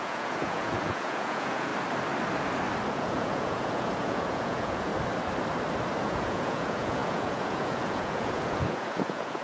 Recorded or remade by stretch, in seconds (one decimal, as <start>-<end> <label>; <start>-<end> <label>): 0.0-1.7 remade; 1.7-2.9 recorded; 2.9-4.9 remade; 4.9-6.0 recorded; 6.0-9.4 remade